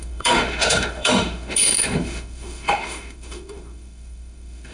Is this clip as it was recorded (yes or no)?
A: no